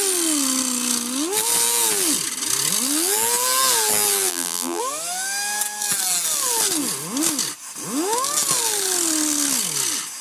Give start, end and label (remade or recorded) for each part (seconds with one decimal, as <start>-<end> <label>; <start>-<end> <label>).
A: 0.0-4.3 recorded; 4.3-4.8 remade; 4.8-10.2 recorded